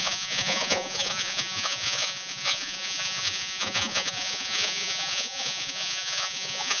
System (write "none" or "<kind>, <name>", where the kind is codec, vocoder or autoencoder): vocoder, Vocos